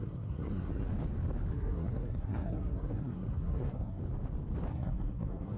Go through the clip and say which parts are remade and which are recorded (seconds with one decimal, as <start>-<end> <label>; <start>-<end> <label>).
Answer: 0.0-0.9 remade; 0.9-1.5 recorded; 1.5-4.0 remade; 4.0-4.7 recorded; 4.7-5.6 remade